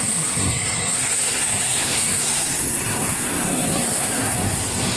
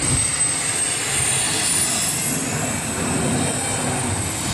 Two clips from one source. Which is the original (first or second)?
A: second